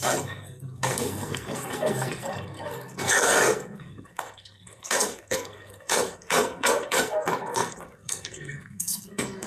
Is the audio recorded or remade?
remade